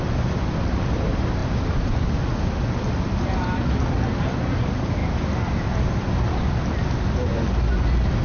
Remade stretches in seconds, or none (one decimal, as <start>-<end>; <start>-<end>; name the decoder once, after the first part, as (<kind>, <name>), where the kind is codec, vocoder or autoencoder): none